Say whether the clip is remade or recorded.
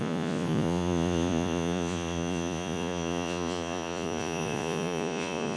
remade